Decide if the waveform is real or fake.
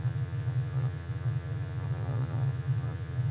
fake